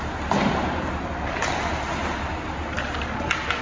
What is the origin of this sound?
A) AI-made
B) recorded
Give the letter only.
A